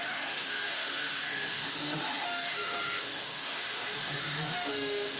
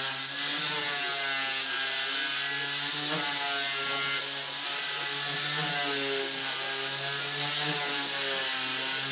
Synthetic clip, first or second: first